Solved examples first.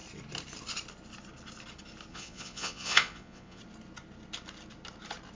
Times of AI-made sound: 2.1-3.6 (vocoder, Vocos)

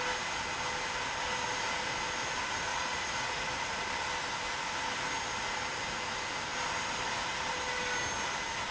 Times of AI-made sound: 2.7-3.8 (vocoder, Vocos)